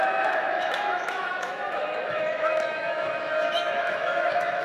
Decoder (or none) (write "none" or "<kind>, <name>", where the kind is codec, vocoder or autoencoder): autoencoder, DAC-VAE